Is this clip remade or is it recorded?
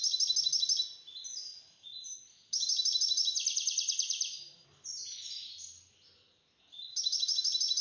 recorded